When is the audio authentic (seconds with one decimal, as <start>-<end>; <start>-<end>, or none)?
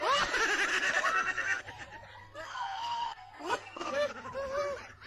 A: 0.0-0.7; 1.6-2.2; 4.1-5.1